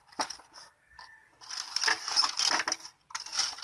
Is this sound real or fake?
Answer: real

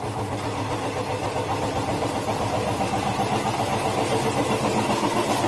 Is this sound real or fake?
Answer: real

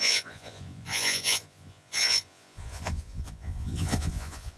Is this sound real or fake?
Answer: fake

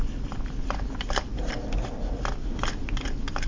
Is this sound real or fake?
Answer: real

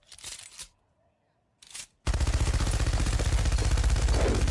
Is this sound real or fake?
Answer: real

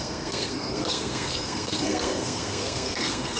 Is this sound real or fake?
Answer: fake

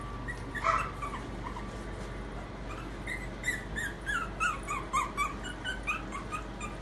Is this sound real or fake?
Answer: real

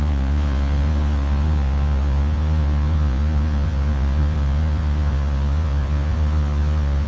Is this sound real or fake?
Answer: fake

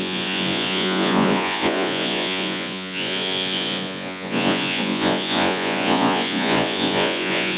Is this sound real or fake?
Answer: fake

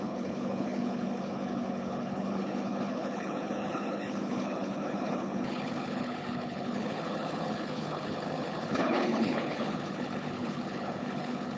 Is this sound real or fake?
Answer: fake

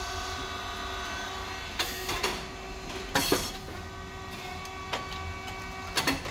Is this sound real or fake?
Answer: real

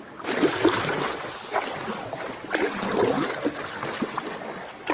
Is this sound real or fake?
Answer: real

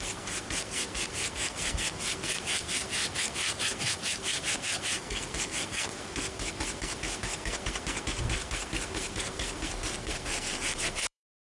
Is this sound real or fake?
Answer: fake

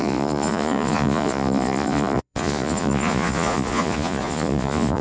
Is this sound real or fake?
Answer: fake